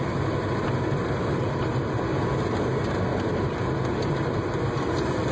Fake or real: real